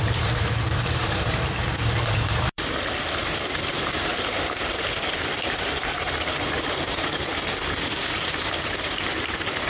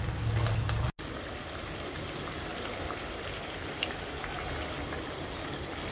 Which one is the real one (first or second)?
second